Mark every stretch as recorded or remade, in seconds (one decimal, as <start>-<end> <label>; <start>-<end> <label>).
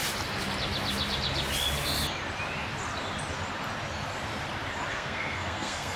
0.0-4.9 recorded; 4.9-6.0 remade